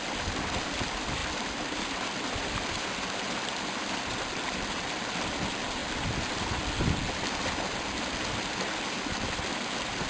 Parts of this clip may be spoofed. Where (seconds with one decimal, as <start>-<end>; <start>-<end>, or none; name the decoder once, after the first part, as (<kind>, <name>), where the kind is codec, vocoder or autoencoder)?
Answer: none